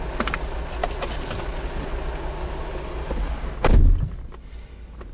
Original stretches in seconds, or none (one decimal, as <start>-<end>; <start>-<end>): 0.0-5.1